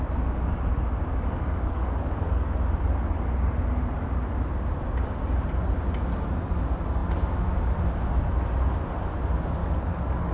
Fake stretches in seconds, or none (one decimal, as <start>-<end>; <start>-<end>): 1.1-2.5; 9.6-10.3